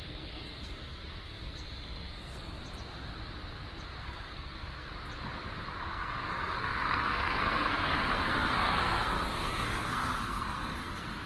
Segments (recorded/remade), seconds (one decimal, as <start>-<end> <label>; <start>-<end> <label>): 0.0-2.6 remade; 2.6-4.0 recorded; 4.0-4.9 remade; 4.9-5.8 recorded; 5.8-11.3 remade